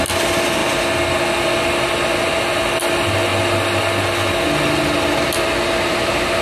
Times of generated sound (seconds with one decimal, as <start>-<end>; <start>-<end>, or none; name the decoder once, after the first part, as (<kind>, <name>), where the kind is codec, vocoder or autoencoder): 0.0-0.6 (vocoder, BigVGAN v2); 2.5-6.4